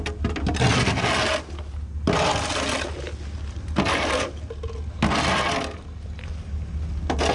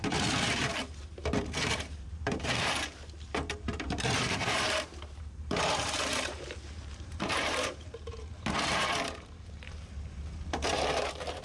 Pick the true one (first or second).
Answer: first